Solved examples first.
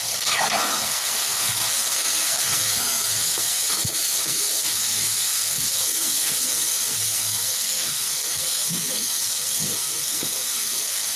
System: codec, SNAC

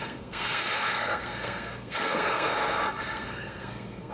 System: codec, SNAC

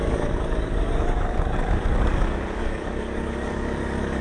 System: codec, DAC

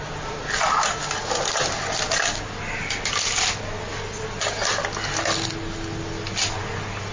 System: none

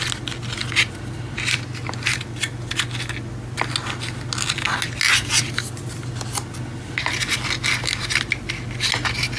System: none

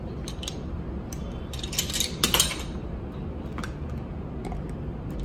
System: none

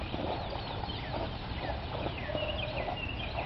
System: vocoder, BigVGAN v2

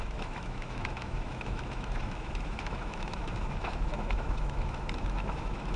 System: autoencoder, DAC-VAE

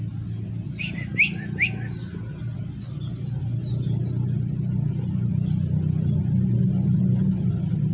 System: none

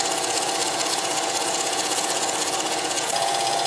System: vocoder, Vocos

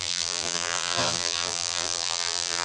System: vocoder, BigVGAN v2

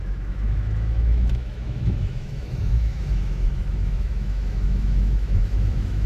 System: autoencoder, DAC-VAE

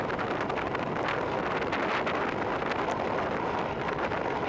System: none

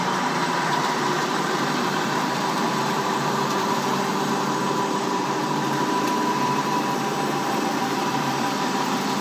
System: vocoder, BigVGAN v2